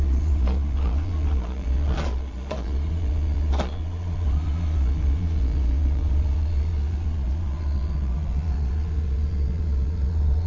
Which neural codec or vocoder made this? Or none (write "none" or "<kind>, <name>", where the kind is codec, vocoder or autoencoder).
vocoder, Vocos